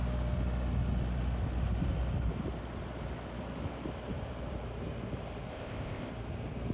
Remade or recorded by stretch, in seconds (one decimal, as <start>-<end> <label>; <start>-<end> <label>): 0.0-5.5 recorded; 5.5-6.1 remade; 6.1-6.7 recorded